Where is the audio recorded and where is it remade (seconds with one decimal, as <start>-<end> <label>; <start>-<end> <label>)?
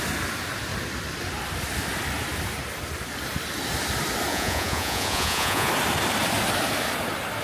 0.0-4.3 recorded; 4.3-5.7 remade; 5.7-7.4 recorded